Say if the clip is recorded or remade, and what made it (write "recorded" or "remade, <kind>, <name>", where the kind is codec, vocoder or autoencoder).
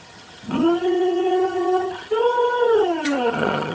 remade, vocoder, HiFi-GAN